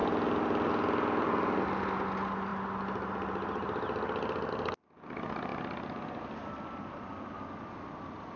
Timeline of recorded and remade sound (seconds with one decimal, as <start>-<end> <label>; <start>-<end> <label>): 0.0-8.4 recorded